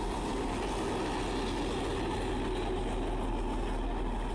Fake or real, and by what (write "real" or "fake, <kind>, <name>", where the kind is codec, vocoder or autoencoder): real